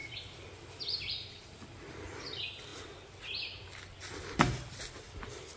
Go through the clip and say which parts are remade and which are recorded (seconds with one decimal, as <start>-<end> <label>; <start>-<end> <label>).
0.0-5.6 recorded